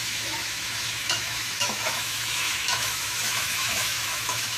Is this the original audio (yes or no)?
no